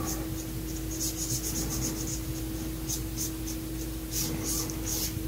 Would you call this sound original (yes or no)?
no